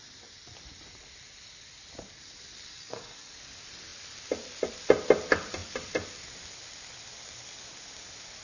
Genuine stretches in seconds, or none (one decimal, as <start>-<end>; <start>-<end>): 0.0-2.7; 3.3-8.4